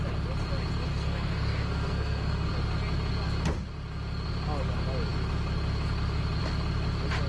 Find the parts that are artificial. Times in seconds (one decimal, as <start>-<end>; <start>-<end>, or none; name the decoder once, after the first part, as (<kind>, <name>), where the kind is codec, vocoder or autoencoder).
0.9-2.5 (codec, SNAC)